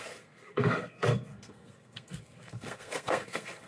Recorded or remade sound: remade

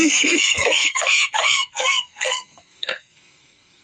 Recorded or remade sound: remade